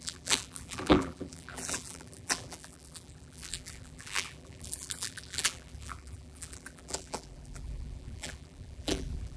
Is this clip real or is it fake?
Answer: fake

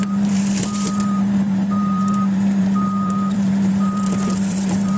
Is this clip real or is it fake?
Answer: fake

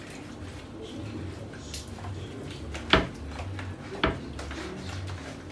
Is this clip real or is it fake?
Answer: real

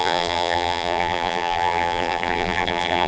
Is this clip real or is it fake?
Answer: fake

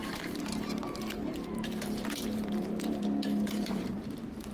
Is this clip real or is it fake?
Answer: fake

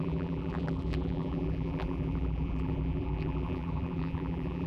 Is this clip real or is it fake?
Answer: fake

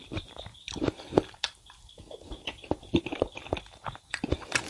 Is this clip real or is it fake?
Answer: fake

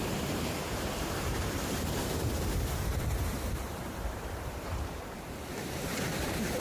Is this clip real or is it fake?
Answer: fake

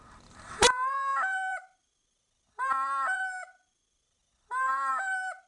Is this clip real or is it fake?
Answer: fake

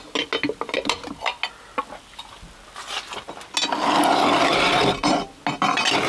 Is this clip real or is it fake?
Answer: real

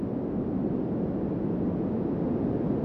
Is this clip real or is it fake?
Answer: real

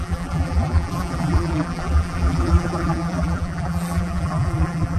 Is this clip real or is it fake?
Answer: fake